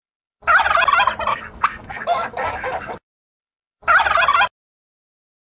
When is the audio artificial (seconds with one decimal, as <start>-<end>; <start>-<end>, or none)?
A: 1.3-3.3